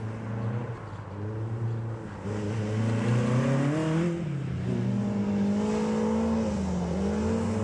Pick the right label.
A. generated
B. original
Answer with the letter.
B